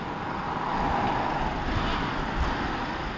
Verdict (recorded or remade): recorded